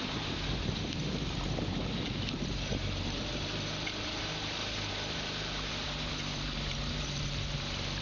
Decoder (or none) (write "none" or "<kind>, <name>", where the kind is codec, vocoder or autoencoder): vocoder, BigVGAN v2